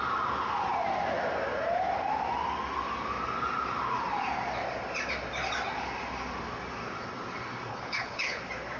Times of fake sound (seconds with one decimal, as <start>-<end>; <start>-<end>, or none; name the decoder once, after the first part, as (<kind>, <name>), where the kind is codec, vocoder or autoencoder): 7.7-8.4 (codec, HILCodec)